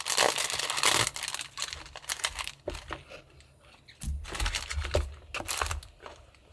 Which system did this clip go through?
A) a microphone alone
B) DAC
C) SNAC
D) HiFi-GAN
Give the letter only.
A